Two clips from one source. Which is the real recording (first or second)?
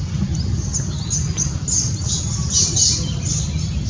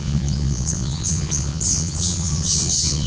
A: first